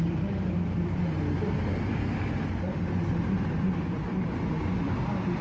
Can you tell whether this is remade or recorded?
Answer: recorded